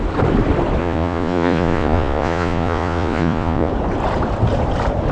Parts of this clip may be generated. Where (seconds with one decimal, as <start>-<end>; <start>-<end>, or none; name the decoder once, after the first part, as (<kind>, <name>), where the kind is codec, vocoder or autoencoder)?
0.8-3.7 (vocoder, Vocos)